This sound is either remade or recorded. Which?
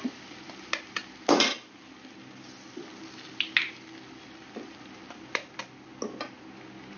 recorded